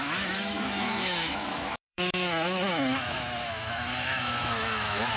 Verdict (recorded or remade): remade